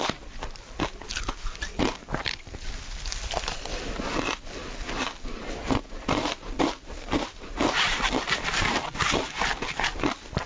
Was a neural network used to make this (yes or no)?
no